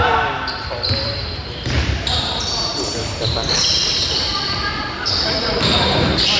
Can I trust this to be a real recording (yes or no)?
no